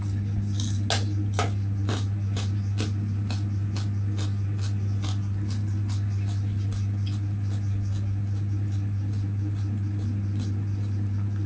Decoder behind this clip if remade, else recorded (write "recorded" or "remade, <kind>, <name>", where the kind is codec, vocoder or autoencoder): recorded